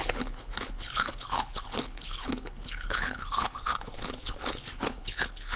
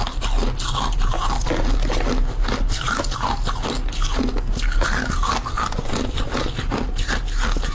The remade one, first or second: first